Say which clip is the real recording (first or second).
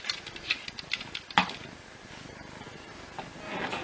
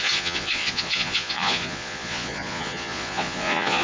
first